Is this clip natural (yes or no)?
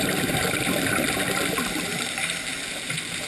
yes